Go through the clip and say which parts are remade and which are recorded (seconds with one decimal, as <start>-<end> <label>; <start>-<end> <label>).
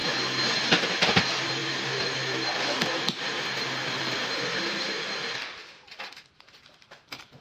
0.0-1.6 recorded; 1.6-6.0 remade; 6.0-7.4 recorded